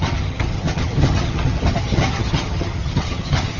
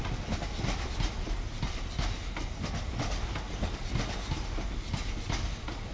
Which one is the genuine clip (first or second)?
second